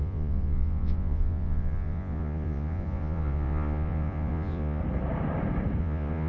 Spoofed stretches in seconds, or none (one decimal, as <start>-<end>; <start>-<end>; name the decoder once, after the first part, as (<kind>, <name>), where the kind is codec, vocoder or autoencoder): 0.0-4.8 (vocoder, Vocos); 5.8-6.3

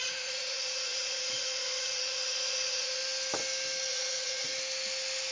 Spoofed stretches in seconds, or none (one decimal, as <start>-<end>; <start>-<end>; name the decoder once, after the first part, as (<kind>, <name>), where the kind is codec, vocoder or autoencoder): 0.0-3.0 (vocoder, Vocos); 3.9-4.5

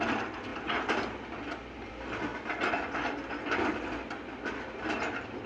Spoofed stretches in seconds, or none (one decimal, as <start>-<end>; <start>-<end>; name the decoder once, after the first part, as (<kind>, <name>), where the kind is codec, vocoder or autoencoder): none